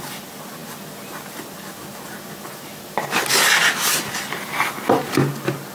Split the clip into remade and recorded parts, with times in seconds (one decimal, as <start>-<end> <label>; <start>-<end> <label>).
0.0-5.7 recorded